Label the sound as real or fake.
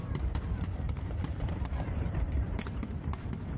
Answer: fake